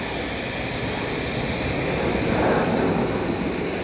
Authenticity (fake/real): real